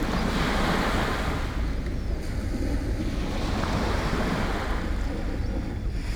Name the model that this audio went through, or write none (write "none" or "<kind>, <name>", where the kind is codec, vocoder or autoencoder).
none